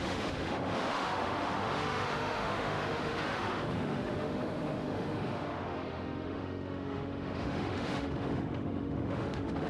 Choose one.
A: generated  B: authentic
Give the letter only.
A